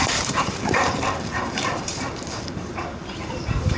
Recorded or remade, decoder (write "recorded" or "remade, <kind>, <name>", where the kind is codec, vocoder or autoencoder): remade, vocoder, BigVGAN v2